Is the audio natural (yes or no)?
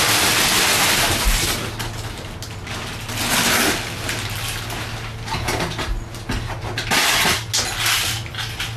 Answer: yes